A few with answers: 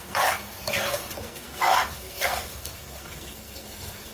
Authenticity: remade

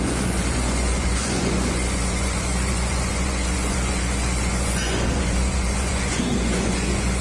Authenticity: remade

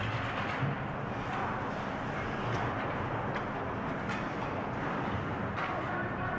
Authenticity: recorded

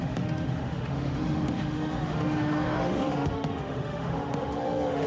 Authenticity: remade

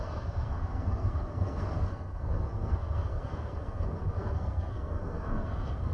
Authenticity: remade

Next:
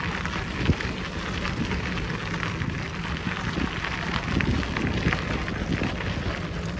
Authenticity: recorded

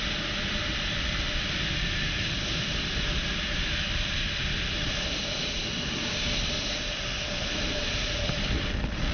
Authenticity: recorded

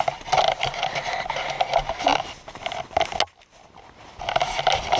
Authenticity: recorded